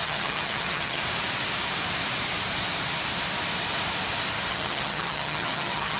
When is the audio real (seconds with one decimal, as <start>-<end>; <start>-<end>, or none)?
1.0-4.5